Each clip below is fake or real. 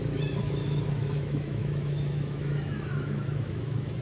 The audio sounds fake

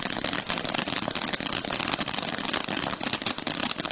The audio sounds real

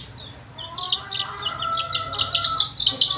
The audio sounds real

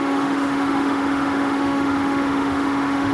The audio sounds fake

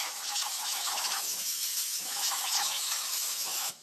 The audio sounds fake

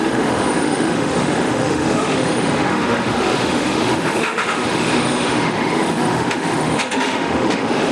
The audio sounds fake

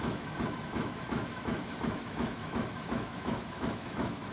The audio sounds fake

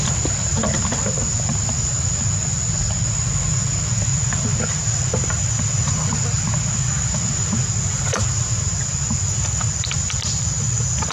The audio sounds real